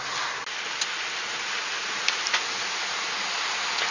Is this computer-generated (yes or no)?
no